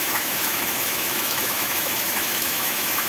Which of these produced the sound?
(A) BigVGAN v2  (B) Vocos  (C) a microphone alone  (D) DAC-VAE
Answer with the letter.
D